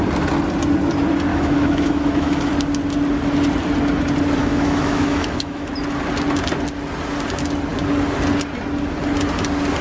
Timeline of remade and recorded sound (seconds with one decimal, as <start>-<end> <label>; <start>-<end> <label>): 0.0-1.3 recorded; 1.3-2.5 remade; 2.5-4.4 recorded; 4.4-5.7 remade; 5.7-9.8 recorded